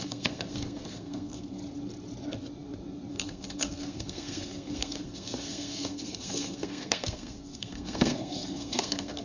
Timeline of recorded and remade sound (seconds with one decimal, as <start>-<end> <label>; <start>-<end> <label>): 0.0-1.6 remade; 1.6-3.1 recorded; 3.1-9.2 remade